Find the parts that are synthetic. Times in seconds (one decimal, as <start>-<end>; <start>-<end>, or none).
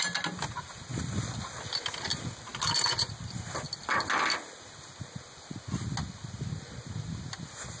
none